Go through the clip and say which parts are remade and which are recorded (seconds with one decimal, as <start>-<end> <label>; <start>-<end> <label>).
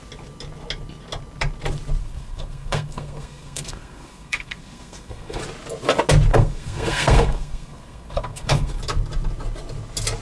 0.0-2.0 recorded; 2.0-5.4 remade; 5.4-6.3 recorded; 6.3-8.8 remade; 8.8-10.2 recorded